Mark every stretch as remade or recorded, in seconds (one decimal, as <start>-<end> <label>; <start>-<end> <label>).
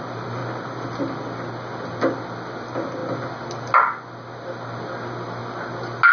0.0-6.1 recorded